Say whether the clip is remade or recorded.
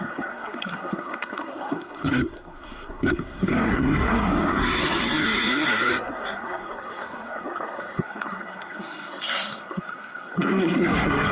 remade